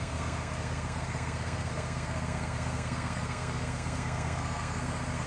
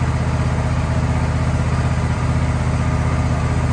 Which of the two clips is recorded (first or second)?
second